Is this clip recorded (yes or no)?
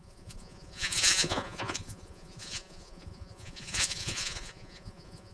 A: no